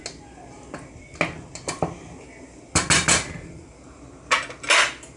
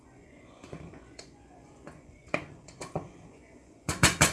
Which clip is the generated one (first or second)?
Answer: second